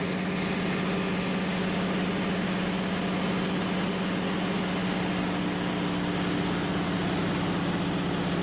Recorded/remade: recorded